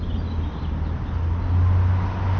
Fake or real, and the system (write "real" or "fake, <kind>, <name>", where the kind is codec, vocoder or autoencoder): real